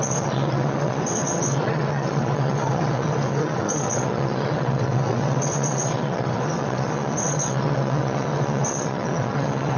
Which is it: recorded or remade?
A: remade